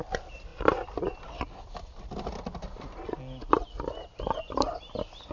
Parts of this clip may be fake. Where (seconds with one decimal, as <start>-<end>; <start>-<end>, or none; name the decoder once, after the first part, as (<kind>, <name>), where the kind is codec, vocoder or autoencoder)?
none